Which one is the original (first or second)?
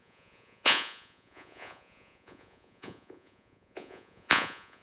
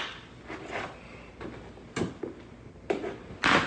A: second